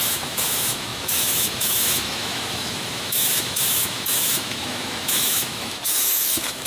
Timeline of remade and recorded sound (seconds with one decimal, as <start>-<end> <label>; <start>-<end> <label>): 0.0-6.7 remade